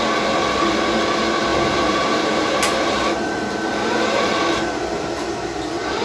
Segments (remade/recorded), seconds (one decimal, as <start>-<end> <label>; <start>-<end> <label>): 0.0-1.5 recorded; 1.5-4.3 remade; 4.3-6.0 recorded